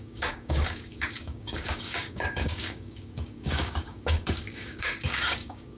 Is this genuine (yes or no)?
no